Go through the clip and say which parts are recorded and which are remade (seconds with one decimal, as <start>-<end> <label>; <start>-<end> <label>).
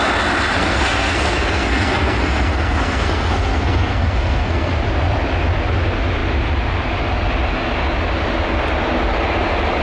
0.0-0.5 recorded; 0.5-4.7 remade; 4.7-9.8 recorded